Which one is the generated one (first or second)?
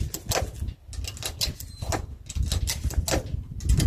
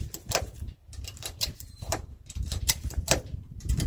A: second